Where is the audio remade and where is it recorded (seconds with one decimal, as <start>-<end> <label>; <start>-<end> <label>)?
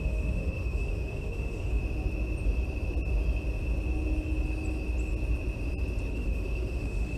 0.0-1.8 remade; 1.8-6.1 recorded; 6.1-7.2 remade